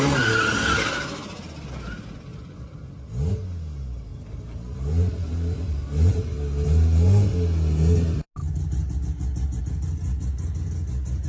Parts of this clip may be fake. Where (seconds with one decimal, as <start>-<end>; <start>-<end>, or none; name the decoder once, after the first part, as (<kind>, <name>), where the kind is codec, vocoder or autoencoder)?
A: 4.1-6.2 (vocoder, BigVGAN v2)